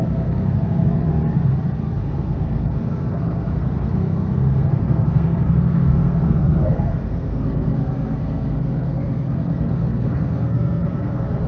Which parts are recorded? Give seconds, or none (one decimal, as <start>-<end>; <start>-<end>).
1.1-2.0